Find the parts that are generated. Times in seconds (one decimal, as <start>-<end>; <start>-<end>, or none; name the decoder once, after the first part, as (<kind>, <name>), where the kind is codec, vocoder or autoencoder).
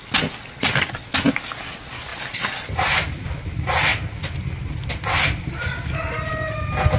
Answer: none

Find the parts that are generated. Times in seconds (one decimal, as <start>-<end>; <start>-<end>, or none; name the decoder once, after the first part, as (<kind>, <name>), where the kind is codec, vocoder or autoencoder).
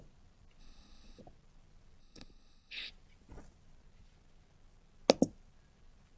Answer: 0.6-1.2 (codec, HILCodec); 2.0-2.9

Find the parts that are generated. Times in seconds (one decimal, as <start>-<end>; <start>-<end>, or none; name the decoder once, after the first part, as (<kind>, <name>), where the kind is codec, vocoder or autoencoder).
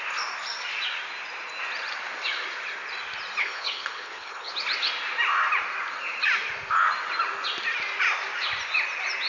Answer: 3.4-4.5 (codec, HILCodec)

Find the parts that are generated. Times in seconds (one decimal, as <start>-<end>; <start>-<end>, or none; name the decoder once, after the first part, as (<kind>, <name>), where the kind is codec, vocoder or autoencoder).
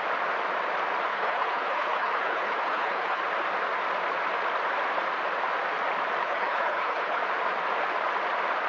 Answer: 1.1-3.2 (codec, HILCodec); 6.2-7.2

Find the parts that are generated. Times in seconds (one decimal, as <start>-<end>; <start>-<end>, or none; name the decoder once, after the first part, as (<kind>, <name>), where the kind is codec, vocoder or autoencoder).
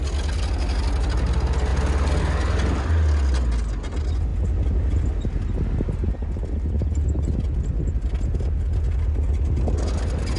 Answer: none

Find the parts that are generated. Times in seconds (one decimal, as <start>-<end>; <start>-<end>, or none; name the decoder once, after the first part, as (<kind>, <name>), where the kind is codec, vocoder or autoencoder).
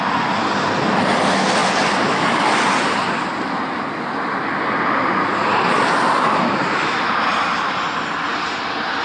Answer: none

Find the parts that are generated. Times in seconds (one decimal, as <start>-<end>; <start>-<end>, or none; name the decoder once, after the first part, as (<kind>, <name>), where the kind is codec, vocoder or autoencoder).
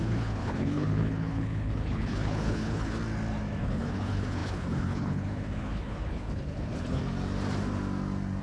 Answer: 0.0-3.0 (codec, HILCodec); 3.6-7.0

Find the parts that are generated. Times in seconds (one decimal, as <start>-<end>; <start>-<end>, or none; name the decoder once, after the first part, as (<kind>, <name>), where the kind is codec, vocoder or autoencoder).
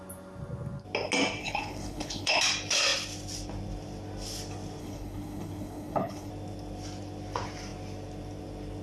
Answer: 1.4-2.4 (codec, HILCodec); 4.8-6.3